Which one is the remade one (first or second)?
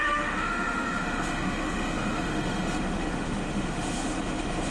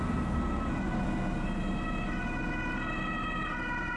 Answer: first